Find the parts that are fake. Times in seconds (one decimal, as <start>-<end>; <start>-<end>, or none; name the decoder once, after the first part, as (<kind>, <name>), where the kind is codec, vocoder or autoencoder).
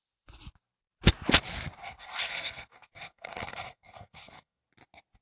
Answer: 1.8-4.6 (codec, SNAC)